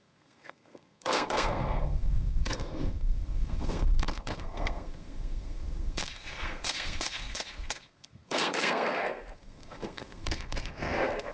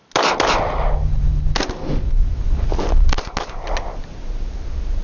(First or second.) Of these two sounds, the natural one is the second